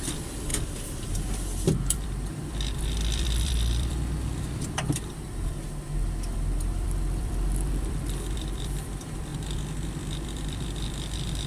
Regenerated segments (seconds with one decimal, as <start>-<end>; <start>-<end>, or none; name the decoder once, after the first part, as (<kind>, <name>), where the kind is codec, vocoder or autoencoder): 0.0-0.5 (vocoder, BigVGAN v2); 1.0-11.5